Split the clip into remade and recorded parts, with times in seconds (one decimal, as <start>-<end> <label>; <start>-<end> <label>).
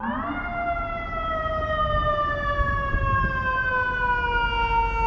0.0-0.6 recorded; 0.6-3.7 remade; 3.7-5.1 recorded